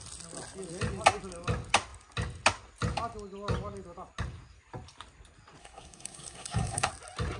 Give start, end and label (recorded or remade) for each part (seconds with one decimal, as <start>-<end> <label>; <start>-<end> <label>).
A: 0.0-5.6 recorded; 5.6-6.9 remade; 6.9-7.4 recorded